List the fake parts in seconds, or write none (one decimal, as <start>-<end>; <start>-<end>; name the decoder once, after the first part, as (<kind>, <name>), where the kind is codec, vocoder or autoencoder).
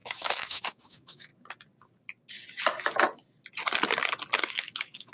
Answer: 0.0-1.3 (autoencoder, DAC-VAE); 4.4-5.1